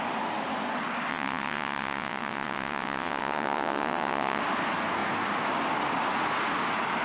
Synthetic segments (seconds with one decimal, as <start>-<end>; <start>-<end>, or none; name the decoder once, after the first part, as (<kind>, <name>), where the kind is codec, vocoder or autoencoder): 1.1-4.4 (vocoder, WaveNeXt)

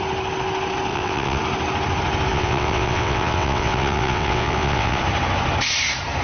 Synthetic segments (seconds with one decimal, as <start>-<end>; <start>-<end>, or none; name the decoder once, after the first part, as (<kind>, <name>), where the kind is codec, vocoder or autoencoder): 0.9-1.4 (vocoder, WaveNeXt); 2.3-5.0